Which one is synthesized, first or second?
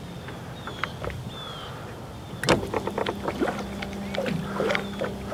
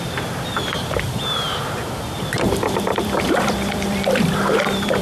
second